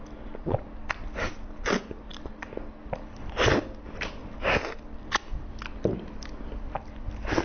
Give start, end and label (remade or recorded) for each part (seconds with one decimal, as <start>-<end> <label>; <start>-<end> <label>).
0.0-7.4 recorded